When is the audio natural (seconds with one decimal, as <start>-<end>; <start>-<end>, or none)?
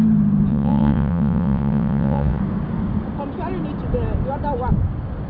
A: 0.0-0.5; 2.4-5.3